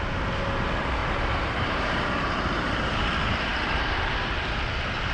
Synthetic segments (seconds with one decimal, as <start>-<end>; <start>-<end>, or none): 1.0-4.1